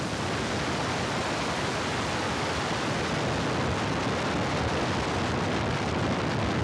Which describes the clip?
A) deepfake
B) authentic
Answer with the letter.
B